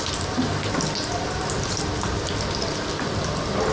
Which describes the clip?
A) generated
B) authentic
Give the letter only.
B